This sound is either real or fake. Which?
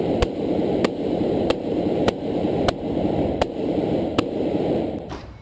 fake